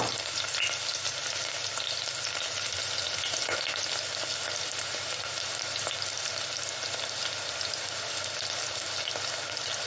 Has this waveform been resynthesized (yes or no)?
no